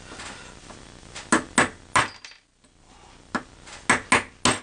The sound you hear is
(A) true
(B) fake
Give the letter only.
A